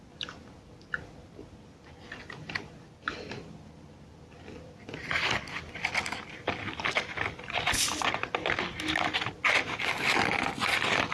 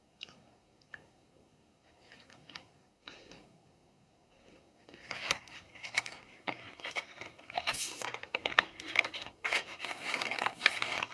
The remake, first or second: second